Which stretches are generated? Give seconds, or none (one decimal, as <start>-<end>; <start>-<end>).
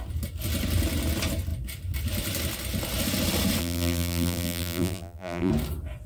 3.6-5.5